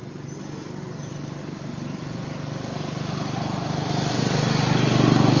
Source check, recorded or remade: recorded